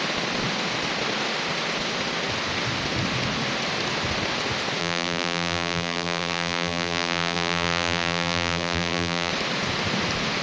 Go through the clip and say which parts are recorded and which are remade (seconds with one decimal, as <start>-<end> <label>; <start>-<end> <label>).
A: 0.0-4.8 recorded; 4.8-9.3 remade; 9.3-10.4 recorded